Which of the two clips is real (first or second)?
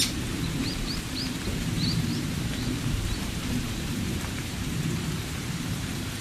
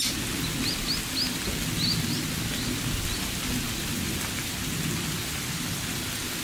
second